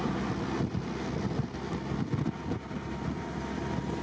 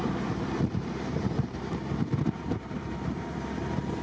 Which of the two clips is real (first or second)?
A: first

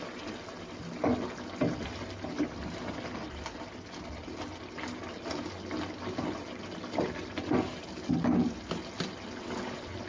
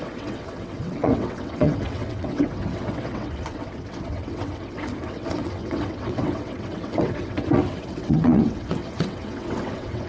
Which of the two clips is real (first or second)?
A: first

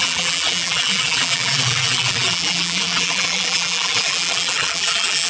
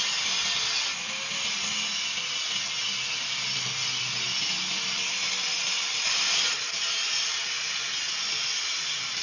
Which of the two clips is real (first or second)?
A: second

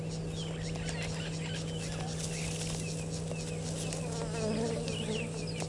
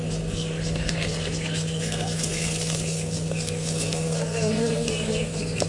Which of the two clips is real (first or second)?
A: first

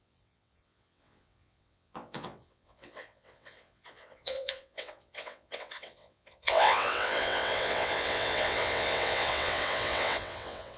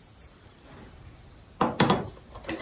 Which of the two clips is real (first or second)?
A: second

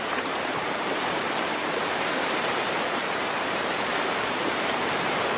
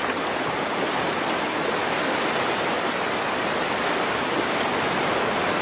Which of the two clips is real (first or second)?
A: second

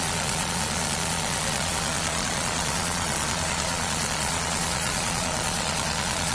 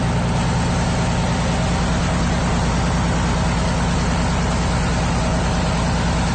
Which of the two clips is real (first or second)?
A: second